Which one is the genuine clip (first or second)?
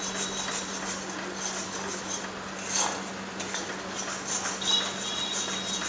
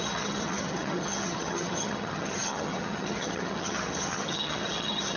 first